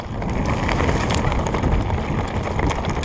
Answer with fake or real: real